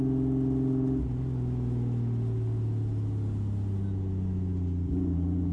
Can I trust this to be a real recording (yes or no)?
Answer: yes